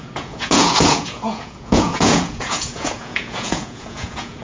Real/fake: fake